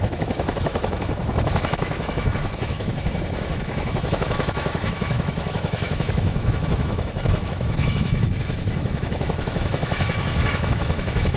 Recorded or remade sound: remade